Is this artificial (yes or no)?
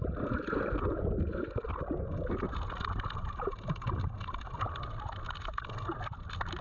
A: no